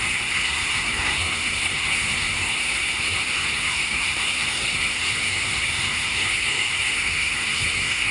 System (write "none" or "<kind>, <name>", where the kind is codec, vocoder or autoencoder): codec, SNAC